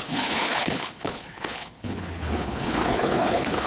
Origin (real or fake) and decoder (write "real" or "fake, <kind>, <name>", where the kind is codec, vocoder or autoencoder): fake, codec, HILCodec